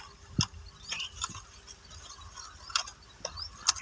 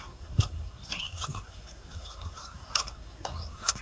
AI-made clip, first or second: second